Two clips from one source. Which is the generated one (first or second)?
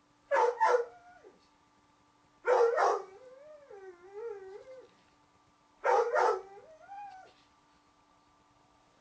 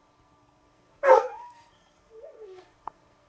second